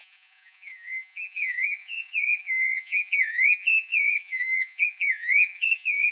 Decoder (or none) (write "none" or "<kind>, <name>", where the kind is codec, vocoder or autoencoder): vocoder, Vocos